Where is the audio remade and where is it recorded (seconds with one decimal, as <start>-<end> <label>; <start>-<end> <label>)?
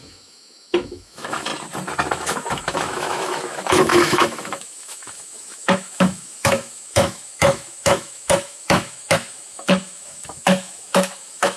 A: 0.0-1.5 remade; 1.5-2.1 recorded; 2.1-11.6 remade